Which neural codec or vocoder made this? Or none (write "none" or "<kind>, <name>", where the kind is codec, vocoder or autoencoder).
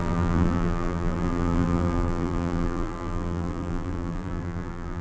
vocoder, BigVGAN v2